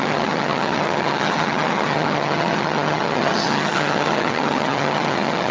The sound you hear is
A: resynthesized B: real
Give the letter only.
A